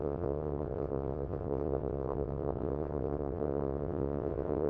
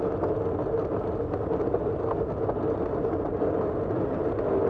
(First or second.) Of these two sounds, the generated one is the first